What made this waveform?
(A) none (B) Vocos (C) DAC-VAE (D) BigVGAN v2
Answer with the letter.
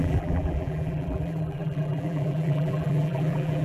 D